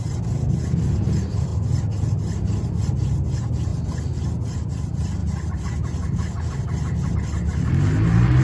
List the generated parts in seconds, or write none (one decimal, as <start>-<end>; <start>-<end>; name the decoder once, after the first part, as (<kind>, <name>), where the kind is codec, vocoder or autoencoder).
none